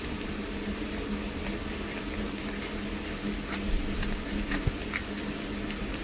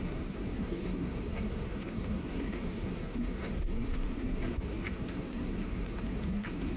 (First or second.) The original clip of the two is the first